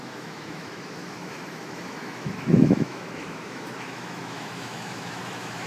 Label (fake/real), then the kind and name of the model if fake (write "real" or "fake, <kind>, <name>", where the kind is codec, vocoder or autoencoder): fake, autoencoder, DAC-VAE